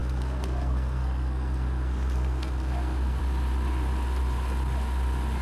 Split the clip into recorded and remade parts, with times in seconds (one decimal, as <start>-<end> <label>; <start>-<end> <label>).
0.0-3.2 remade; 3.2-5.4 recorded